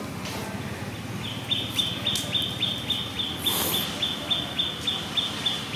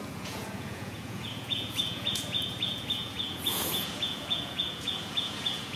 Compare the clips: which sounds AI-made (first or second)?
second